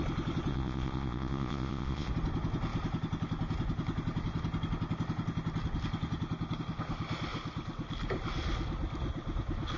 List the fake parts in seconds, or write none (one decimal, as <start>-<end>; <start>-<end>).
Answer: 0.5-2.1